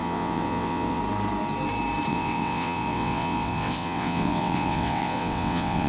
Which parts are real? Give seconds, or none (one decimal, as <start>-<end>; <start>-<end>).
1.0-2.1